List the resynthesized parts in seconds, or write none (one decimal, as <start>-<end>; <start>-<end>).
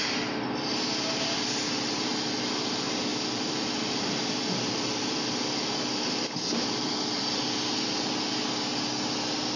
3.1-7.2